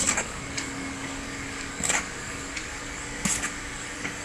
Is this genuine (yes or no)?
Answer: no